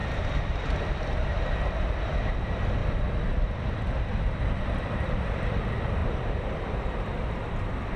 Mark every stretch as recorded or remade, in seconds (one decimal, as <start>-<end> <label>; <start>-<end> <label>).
0.0-0.9 remade; 0.9-2.8 recorded; 2.8-5.5 remade; 5.5-6.0 recorded; 6.0-8.0 remade